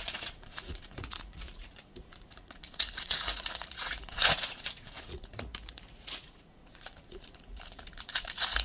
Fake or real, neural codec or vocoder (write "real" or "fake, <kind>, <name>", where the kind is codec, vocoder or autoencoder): fake, vocoder, Vocos